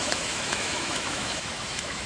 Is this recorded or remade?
remade